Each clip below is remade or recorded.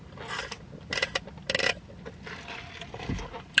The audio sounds recorded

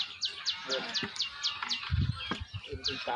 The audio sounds recorded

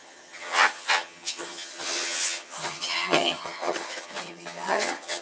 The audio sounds remade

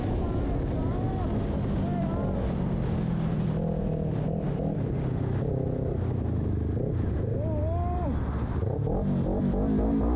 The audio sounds recorded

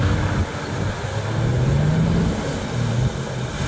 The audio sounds recorded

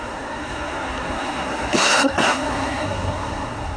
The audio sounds remade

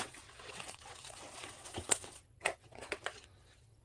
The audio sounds remade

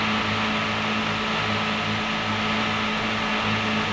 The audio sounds recorded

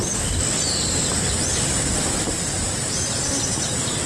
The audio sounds recorded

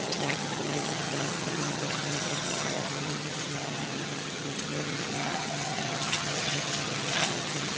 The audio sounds remade